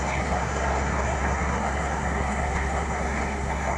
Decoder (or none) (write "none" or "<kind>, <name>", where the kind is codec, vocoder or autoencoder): codec, SNAC